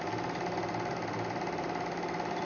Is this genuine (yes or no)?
yes